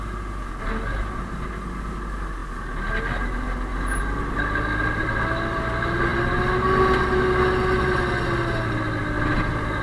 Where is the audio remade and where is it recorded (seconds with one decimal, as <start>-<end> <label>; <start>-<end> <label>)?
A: 0.0-9.8 recorded